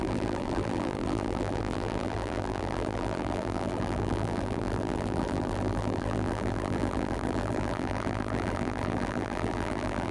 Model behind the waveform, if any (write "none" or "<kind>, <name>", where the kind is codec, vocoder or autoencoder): vocoder, BigVGAN v2